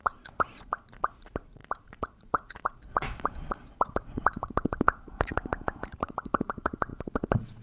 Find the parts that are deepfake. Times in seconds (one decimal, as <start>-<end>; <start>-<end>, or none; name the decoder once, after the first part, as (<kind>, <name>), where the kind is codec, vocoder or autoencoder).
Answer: 0.0-7.6 (vocoder, Vocos)